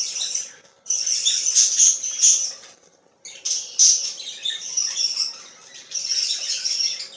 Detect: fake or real real